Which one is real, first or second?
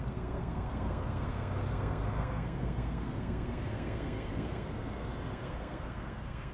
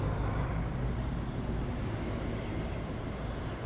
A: second